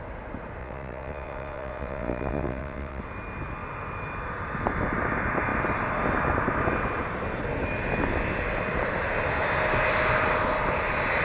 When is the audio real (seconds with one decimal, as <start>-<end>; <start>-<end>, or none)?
0.0-0.6; 3.0-11.2